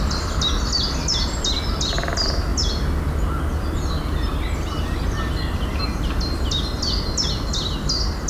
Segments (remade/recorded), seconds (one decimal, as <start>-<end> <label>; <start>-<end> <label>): 0.0-8.3 recorded